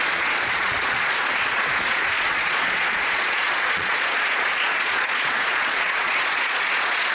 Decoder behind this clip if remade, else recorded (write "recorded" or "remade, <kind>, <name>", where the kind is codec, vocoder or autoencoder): remade, vocoder, Vocos